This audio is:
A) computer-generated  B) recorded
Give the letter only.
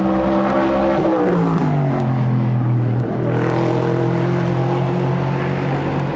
B